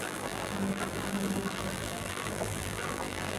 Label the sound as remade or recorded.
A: remade